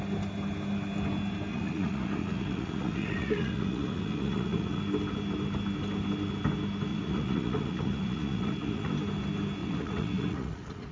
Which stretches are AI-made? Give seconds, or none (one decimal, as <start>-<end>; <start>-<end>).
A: 1.5-4.8; 6.9-8.9; 9.6-10.9